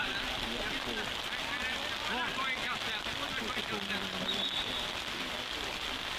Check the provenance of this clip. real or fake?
real